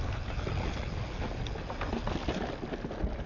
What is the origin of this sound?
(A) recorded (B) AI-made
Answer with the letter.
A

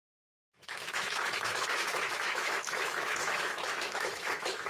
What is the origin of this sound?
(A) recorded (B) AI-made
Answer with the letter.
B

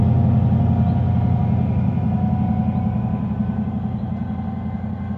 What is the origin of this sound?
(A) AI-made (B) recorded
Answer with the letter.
B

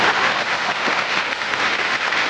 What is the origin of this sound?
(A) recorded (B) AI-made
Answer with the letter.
B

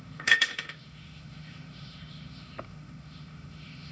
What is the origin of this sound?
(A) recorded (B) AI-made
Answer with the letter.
B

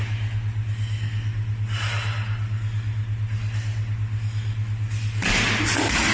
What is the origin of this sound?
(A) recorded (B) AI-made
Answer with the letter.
A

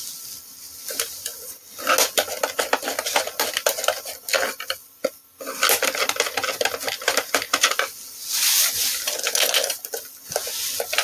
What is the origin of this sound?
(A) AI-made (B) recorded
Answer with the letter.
B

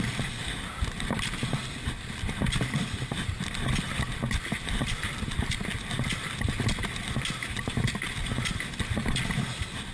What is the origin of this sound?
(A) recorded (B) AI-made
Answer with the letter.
A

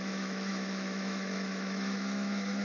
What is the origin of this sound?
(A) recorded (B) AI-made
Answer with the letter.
B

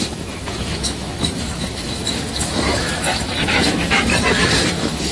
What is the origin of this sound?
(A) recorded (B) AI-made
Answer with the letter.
B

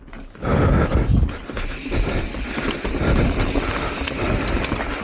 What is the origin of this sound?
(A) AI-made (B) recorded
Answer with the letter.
B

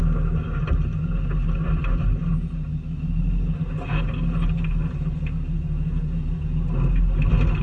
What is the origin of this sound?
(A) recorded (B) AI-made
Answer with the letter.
A